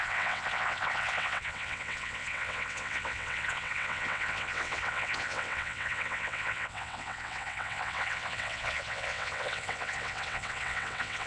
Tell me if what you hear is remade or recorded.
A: remade